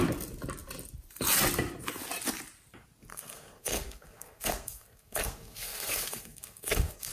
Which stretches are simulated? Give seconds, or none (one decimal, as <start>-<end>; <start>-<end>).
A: 3.1-7.1